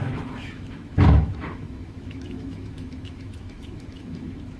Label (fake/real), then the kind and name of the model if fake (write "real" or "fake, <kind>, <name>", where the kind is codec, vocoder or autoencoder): fake, autoencoder, DAC-VAE